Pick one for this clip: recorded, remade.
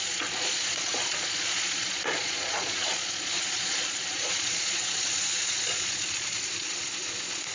remade